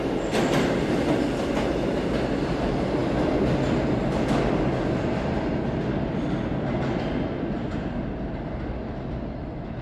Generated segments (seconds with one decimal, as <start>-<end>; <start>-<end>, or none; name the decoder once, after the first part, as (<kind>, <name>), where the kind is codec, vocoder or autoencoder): none